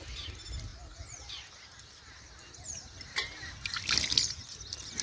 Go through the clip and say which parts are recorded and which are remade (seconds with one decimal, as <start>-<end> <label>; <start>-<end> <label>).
0.0-5.0 recorded